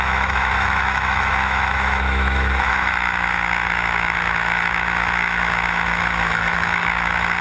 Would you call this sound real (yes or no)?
no